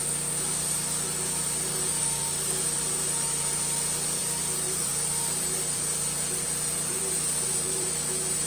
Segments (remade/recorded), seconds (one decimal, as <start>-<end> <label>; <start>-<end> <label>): 0.0-4.2 recorded; 4.2-8.0 remade; 8.0-8.5 recorded